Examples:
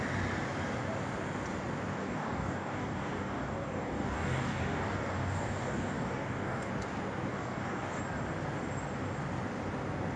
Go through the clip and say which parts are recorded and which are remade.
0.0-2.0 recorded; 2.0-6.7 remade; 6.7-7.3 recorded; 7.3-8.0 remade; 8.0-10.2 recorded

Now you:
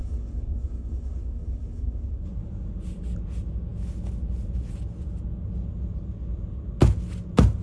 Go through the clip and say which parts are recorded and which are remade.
0.0-2.3 remade; 2.3-7.6 recorded

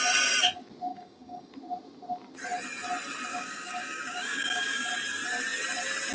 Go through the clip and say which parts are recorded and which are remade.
0.0-0.9 recorded; 0.9-1.5 remade; 1.5-3.3 recorded; 3.3-4.9 remade; 4.9-6.1 recorded

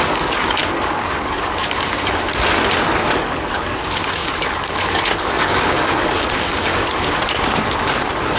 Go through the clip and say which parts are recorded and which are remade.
0.0-2.3 remade; 2.3-3.0 recorded; 3.0-8.4 remade

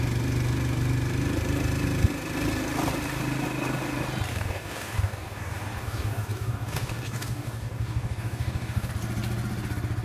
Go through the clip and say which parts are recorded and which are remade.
0.0-4.3 recorded; 4.3-8.9 remade; 8.9-10.0 recorded